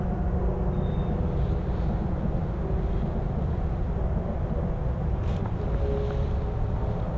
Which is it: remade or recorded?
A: recorded